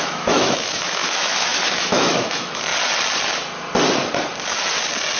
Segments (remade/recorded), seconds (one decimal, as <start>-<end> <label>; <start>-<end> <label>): 0.0-2.7 remade; 2.7-5.2 recorded